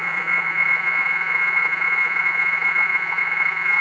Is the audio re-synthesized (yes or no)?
yes